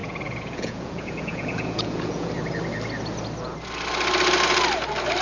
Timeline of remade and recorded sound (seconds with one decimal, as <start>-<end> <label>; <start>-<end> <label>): 0.0-2.3 remade; 2.3-5.2 recorded